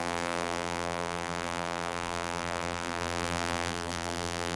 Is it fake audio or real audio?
fake